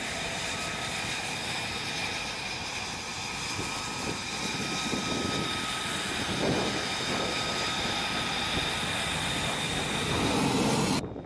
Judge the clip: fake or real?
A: real